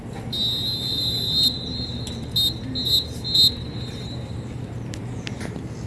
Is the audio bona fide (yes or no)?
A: yes